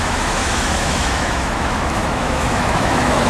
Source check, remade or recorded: remade